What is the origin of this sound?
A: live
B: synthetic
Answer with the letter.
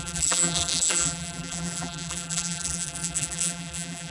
B